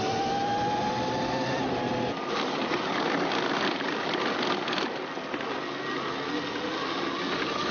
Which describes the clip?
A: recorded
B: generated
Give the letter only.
A